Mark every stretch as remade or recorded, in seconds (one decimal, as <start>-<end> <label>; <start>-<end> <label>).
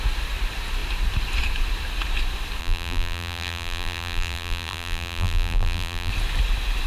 0.0-2.6 recorded; 2.6-6.1 remade; 6.1-6.9 recorded